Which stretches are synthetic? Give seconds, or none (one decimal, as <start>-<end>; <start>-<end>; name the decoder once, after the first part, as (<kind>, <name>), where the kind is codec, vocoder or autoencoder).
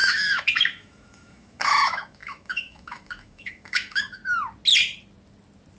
0.0-4.2 (autoencoder, DAC-VAE)